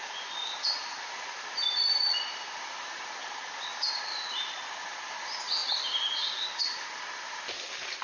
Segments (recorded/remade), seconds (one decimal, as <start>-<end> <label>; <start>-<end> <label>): 0.0-8.0 recorded